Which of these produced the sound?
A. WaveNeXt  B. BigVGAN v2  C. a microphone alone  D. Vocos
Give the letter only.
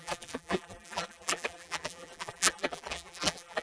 B